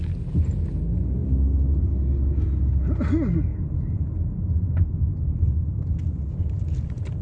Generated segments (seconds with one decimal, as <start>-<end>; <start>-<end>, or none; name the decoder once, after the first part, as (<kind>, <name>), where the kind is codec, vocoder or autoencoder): none